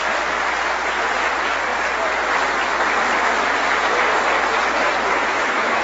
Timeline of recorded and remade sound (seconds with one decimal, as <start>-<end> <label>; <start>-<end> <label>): 0.0-5.3 recorded; 5.3-5.8 remade